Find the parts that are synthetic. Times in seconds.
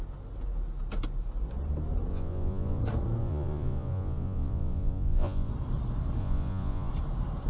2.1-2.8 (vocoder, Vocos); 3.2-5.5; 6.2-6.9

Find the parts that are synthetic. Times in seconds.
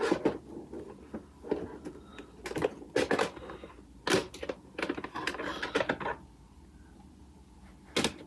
none